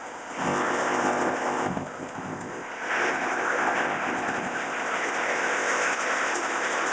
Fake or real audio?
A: fake